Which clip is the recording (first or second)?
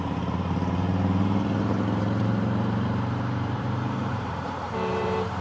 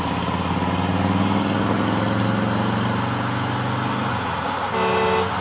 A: second